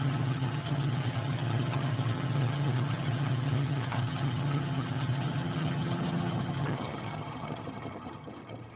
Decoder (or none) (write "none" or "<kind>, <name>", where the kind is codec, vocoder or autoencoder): vocoder, HiFi-GAN